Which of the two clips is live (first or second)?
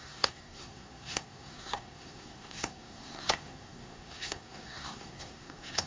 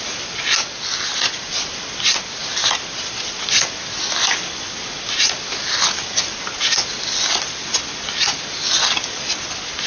second